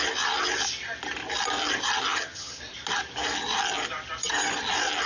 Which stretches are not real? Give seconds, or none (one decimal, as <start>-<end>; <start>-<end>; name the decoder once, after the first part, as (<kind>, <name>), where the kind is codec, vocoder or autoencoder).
2.1-2.6 (vocoder, HiFi-GAN)